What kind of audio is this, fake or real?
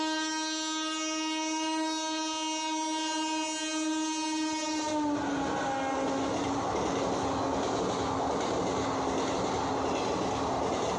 real